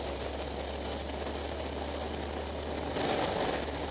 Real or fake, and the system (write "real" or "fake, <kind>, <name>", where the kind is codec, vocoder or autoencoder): real